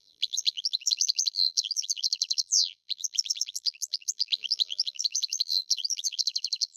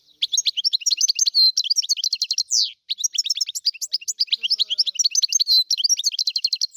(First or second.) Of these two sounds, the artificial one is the first